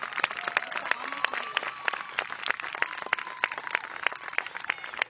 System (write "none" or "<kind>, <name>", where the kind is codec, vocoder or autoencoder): none